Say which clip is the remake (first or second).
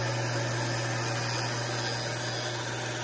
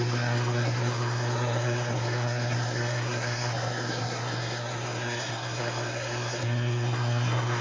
second